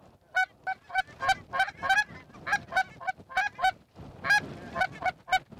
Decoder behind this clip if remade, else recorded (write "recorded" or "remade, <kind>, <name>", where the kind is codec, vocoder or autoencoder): recorded